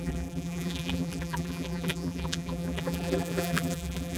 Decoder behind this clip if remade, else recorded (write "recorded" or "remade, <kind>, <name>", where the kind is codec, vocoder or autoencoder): remade, vocoder, BigVGAN v2